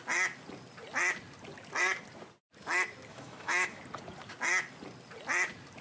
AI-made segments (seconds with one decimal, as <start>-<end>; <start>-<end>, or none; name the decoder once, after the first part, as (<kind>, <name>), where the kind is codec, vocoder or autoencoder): 3.1-3.8 (autoencoder, DAC-VAE)